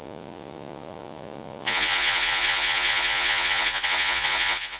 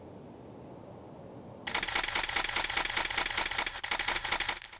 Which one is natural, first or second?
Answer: second